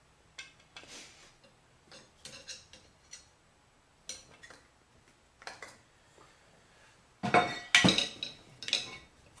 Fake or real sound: real